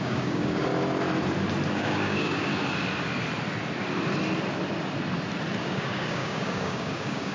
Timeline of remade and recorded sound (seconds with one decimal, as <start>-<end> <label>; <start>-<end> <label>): 0.0-0.7 remade; 0.7-1.7 recorded; 1.7-2.5 remade; 2.5-5.6 recorded; 5.6-7.3 remade